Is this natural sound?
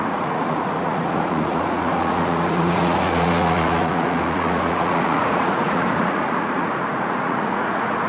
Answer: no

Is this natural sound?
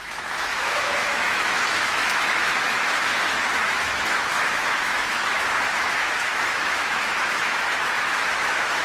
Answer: no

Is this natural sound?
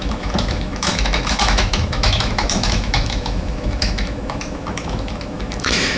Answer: no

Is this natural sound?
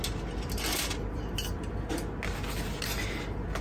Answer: yes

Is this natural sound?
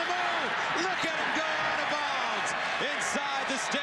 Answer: yes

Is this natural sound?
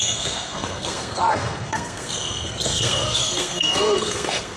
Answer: no